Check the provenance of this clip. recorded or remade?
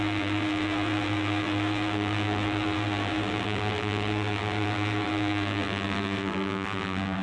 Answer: remade